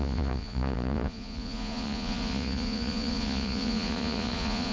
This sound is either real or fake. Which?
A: fake